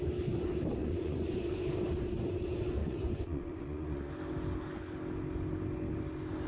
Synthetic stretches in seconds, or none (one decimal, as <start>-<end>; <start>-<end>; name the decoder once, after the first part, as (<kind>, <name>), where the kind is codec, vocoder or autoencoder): 0.8-1.6 (vocoder, Vocos); 2.8-4.1